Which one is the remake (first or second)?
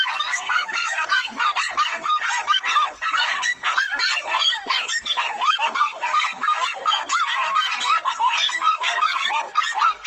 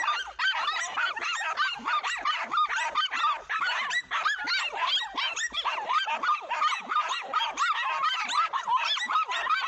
first